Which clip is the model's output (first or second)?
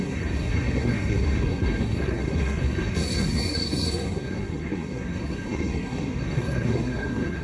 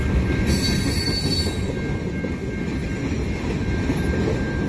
first